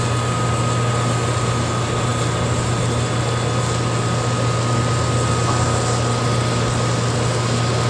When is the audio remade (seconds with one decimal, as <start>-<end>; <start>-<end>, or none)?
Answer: none